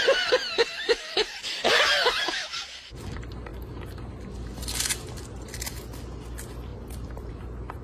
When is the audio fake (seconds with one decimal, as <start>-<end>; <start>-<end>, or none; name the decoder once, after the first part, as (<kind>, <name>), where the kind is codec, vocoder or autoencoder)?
none